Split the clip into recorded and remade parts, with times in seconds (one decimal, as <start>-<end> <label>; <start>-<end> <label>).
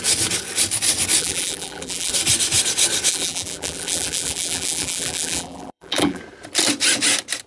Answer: 0.0-1.2 recorded; 1.2-2.1 remade; 2.1-3.1 recorded; 3.1-6.2 remade; 6.2-7.5 recorded